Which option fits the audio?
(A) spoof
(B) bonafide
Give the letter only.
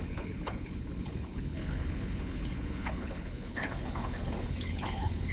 A